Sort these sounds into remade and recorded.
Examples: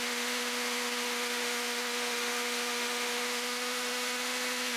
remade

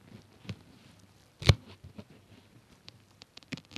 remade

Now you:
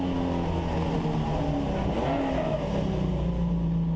recorded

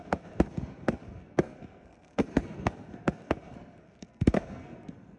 remade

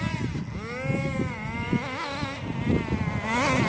recorded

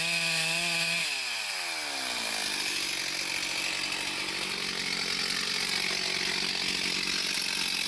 recorded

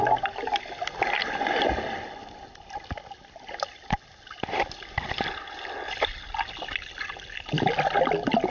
recorded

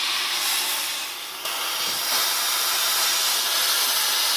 recorded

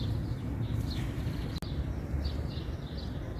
recorded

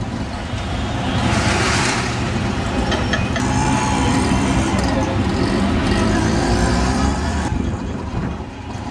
remade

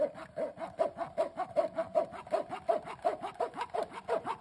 recorded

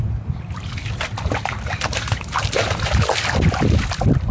recorded